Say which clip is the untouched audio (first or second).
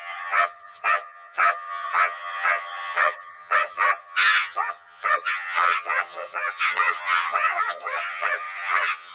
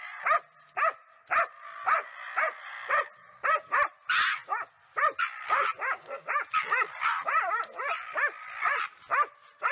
second